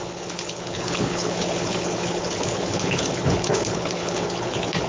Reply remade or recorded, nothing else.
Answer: remade